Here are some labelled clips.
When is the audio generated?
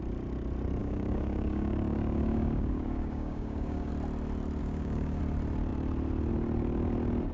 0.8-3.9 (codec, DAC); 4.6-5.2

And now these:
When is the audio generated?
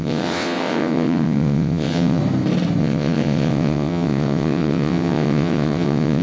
0.0-2.2 (vocoder, WaveNeXt); 2.8-6.2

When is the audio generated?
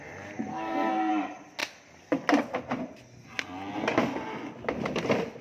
0.5-1.1 (codec, SNAC)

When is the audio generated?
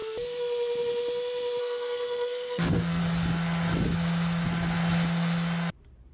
1.6-3.0 (codec, SNAC)